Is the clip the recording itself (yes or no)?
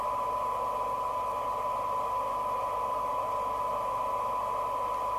yes